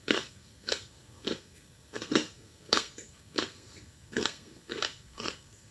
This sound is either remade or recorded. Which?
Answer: remade